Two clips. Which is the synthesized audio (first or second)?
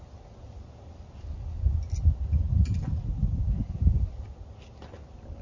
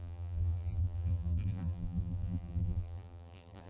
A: second